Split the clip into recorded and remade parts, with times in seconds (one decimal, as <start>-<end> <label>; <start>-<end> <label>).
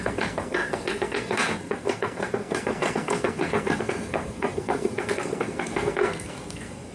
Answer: 0.0-6.9 remade